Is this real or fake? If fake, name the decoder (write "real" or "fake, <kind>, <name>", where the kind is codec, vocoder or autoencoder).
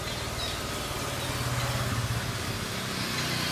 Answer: real